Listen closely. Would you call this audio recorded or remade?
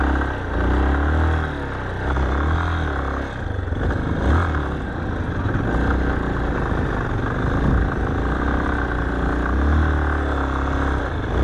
recorded